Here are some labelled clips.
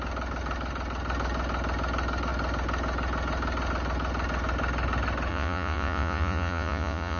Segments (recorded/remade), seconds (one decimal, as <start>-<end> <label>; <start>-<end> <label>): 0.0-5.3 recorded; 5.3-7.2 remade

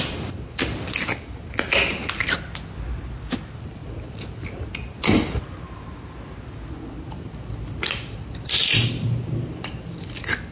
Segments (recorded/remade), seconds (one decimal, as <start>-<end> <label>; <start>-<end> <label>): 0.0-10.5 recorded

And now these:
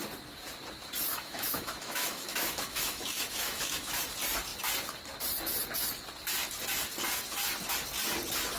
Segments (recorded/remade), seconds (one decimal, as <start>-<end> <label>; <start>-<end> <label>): 0.0-1.1 recorded; 1.1-4.0 remade; 4.0-8.6 recorded

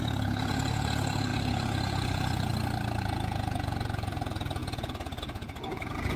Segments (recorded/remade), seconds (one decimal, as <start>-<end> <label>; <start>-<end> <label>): 0.0-2.5 remade; 2.5-3.0 recorded; 3.0-6.2 remade